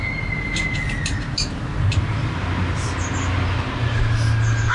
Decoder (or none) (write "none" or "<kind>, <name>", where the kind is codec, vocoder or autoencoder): none